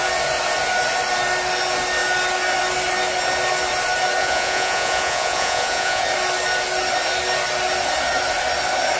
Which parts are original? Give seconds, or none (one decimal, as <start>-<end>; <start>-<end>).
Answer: 0.0-4.2; 6.0-9.0